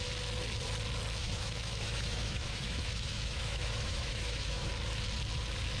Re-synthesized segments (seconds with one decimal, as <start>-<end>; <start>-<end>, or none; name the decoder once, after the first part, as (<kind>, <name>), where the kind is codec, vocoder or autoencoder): 1.2-4.7 (autoencoder, DAC-VAE)

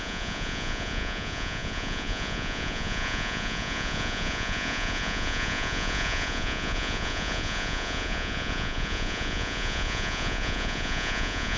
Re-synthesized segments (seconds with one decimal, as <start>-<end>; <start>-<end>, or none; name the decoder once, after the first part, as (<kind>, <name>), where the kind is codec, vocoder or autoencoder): 0.0-11.6 (vocoder, Vocos)